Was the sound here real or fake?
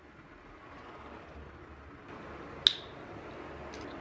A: real